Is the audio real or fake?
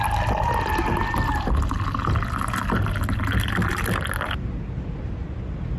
real